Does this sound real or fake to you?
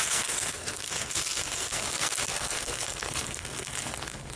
fake